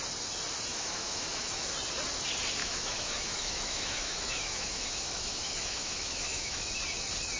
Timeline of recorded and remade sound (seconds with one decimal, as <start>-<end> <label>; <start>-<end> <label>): 0.0-0.7 recorded; 0.7-1.7 remade; 1.7-2.6 recorded; 2.6-6.7 remade; 6.7-7.4 recorded